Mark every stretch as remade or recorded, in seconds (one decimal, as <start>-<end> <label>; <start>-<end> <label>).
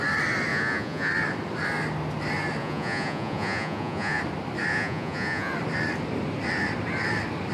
0.0-0.5 recorded; 0.5-1.1 remade; 1.1-2.6 recorded; 2.6-4.2 remade; 4.2-4.7 recorded; 4.7-5.5 remade; 5.5-7.5 recorded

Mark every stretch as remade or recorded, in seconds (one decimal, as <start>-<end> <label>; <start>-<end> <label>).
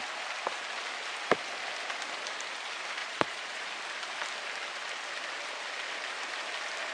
0.0-3.0 recorded; 3.0-3.7 remade; 3.7-6.9 recorded